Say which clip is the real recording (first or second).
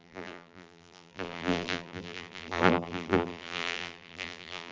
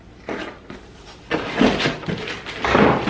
second